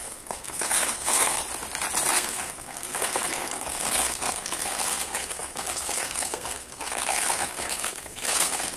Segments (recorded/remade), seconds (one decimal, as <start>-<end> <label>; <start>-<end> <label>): 0.0-1.4 remade; 1.4-2.1 recorded; 2.1-8.8 remade